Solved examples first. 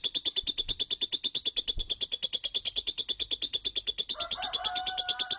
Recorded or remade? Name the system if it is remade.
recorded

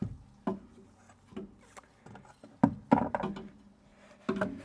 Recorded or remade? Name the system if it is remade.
recorded